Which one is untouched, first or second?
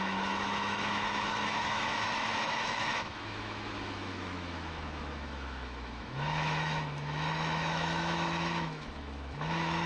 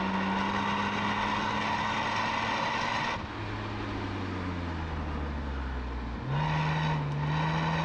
second